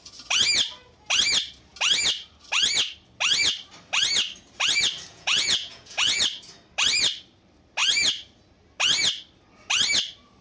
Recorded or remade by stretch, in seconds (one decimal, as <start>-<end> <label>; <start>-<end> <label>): 0.0-5.1 recorded; 5.1-6.2 remade; 6.2-10.4 recorded